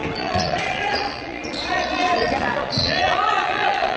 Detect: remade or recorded remade